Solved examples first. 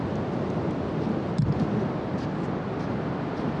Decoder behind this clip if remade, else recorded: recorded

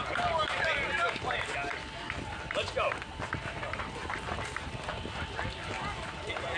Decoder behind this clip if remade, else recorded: recorded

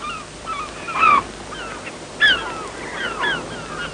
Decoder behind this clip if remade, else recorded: recorded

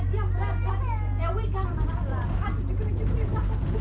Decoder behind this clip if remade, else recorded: recorded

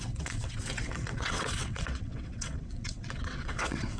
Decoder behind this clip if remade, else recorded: remade, vocoder, WaveNeXt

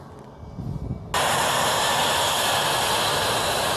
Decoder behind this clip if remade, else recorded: recorded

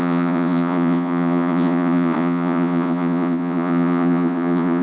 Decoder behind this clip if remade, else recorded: remade, vocoder, Vocos